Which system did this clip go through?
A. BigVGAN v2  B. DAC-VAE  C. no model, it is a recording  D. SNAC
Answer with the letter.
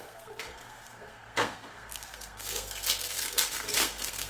D